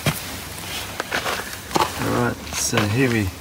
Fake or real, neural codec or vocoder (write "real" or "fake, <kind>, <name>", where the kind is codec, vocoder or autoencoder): fake, vocoder, BigVGAN v2